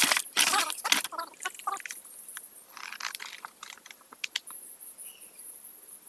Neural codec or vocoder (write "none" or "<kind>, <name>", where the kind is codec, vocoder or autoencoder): none